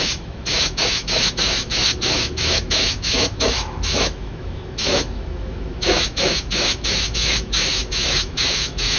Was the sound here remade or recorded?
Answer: remade